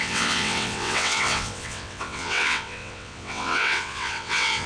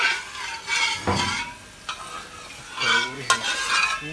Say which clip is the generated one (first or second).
first